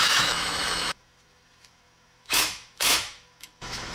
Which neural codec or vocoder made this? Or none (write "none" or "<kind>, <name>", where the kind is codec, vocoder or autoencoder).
autoencoder, DAC-VAE